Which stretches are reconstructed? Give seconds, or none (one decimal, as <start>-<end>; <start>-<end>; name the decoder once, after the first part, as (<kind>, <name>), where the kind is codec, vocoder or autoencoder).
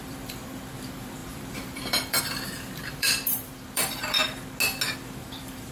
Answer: 0.0-4.2 (vocoder, BigVGAN v2); 5.0-5.7